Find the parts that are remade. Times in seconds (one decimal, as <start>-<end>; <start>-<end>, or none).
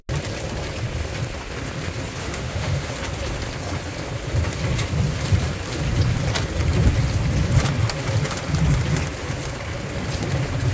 2.2-2.9